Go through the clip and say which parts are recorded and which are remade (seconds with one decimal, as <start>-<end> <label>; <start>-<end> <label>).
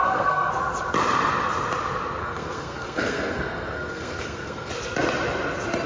0.0-0.5 remade; 0.5-2.2 recorded; 2.2-4.7 remade; 4.7-5.9 recorded